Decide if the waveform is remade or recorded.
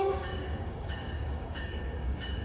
remade